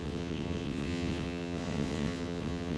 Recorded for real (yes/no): no